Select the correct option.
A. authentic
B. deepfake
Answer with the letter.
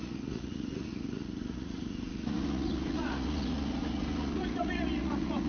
B